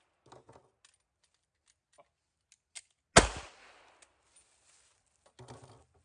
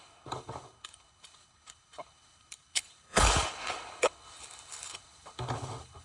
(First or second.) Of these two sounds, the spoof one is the second